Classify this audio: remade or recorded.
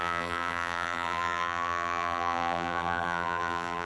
remade